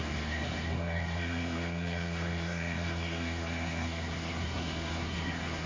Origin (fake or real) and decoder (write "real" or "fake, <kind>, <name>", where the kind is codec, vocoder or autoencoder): fake, codec, SNAC